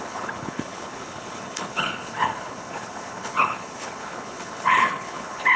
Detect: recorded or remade remade